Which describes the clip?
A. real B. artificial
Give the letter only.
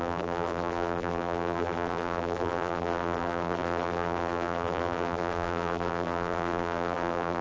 B